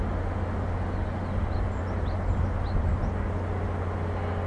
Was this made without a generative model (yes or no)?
yes